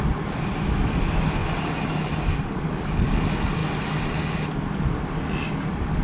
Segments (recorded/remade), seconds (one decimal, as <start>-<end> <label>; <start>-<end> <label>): 0.0-6.0 recorded